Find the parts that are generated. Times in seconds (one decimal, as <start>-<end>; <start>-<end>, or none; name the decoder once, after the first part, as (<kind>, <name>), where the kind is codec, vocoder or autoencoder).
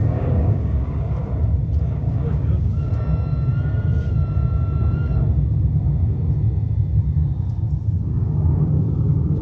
0.0-1.2 (codec, DAC); 1.8-2.9; 8.0-9.4